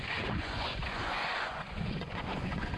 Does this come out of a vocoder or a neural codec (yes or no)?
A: yes